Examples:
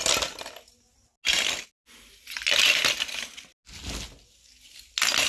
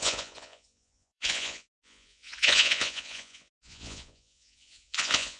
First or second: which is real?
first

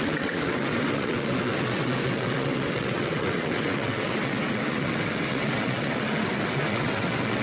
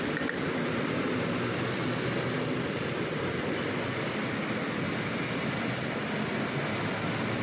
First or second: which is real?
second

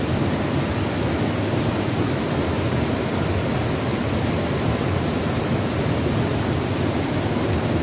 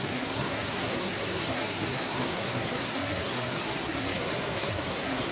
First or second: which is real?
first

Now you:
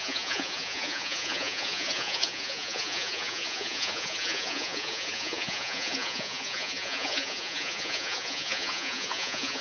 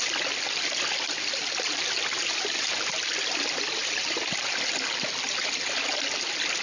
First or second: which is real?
second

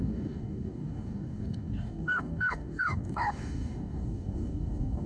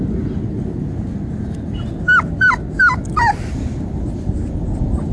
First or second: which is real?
second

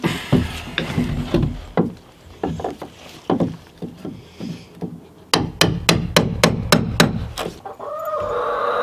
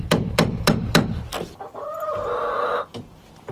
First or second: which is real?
first